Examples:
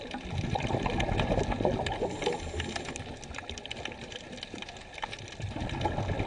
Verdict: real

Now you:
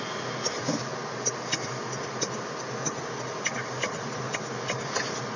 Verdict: real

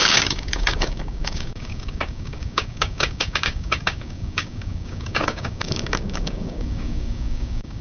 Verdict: fake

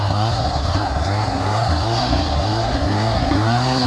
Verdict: fake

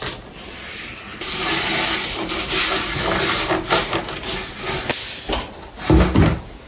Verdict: real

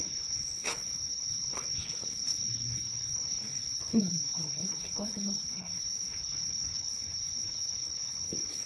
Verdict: fake